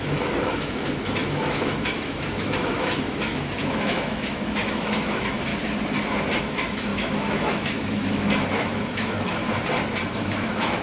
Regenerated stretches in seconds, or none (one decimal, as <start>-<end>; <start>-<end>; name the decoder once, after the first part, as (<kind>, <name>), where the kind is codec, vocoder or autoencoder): 0.0-5.5 (autoencoder, DAC-VAE); 6.4-9.4; 10.1-10.8